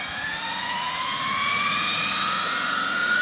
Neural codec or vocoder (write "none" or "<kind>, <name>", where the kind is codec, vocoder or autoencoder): vocoder, Vocos